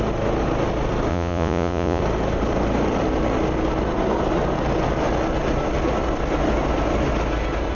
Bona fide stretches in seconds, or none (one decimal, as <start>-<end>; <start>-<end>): 0.0-1.1; 2.0-7.7